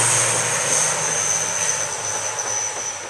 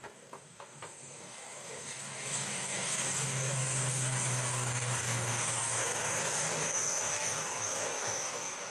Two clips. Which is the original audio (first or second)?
first